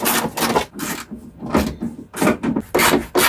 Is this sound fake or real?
real